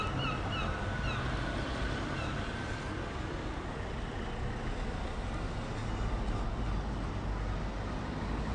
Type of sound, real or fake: real